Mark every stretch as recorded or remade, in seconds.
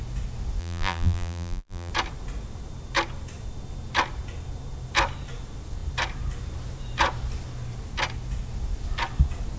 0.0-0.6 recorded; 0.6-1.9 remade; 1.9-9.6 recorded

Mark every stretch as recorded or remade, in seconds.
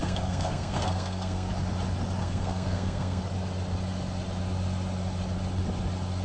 0.0-1.5 remade; 1.5-2.2 recorded; 2.2-3.2 remade; 3.2-6.2 recorded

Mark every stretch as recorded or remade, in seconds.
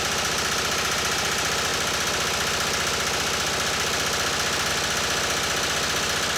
0.0-6.4 recorded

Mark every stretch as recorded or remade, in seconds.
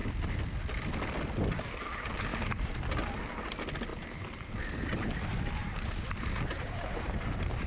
0.0-2.3 recorded; 2.3-2.9 remade; 2.9-3.9 recorded; 3.9-4.5 remade; 4.5-5.6 recorded; 5.6-7.7 remade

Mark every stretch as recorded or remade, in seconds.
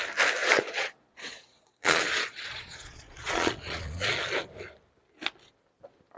0.0-0.4 recorded; 0.4-4.1 remade; 4.1-6.2 recorded